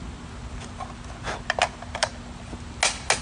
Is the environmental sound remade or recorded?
recorded